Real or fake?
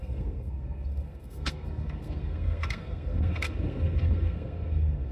fake